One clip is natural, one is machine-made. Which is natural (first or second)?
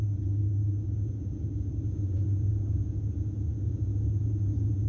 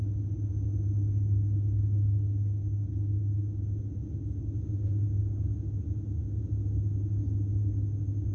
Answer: second